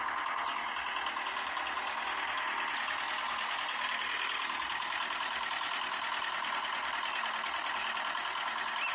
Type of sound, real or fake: real